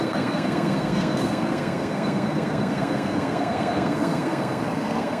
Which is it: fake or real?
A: fake